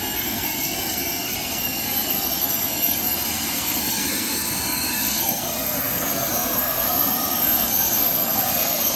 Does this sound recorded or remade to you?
remade